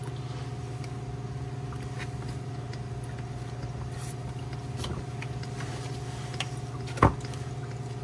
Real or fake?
real